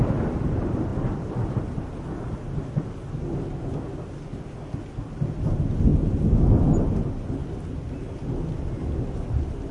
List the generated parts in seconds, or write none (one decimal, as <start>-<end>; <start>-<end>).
none